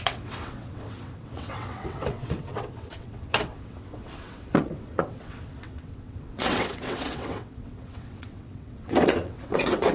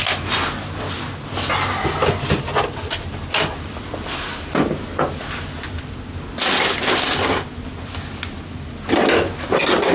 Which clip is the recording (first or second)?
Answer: second